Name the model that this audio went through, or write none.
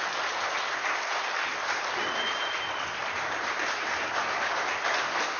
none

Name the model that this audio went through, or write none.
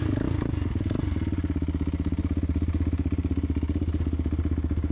none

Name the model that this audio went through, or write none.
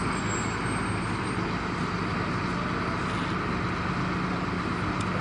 none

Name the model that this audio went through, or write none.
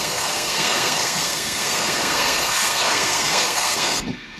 codec, SNAC